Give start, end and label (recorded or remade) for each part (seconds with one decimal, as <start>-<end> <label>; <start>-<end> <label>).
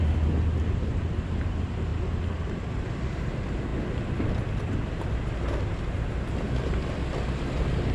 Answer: 0.0-7.9 recorded